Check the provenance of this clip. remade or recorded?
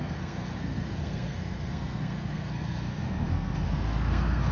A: remade